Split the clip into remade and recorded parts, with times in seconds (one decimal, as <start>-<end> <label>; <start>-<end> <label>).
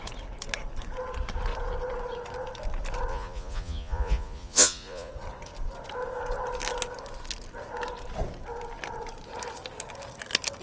0.0-3.1 recorded; 3.1-5.1 remade; 5.1-10.6 recorded